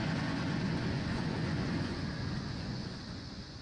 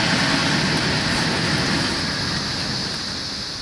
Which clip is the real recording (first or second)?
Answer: second